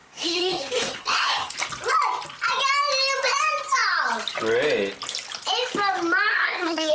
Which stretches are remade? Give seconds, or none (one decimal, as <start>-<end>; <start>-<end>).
0.0-1.5; 6.3-6.9